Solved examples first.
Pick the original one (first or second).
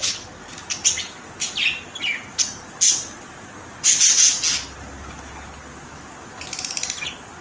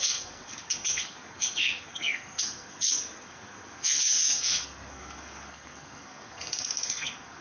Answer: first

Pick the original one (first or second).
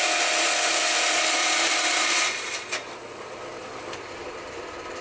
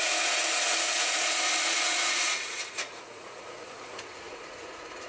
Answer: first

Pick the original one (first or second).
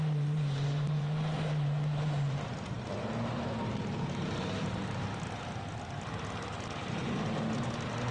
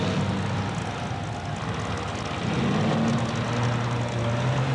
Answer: second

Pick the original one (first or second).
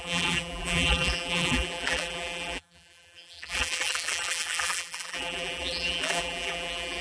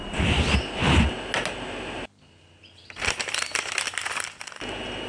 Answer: second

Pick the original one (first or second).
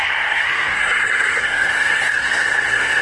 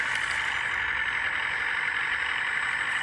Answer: second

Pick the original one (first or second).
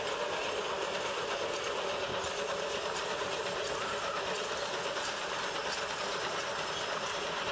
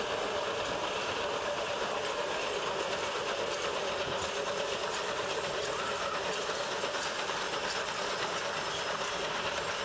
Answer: first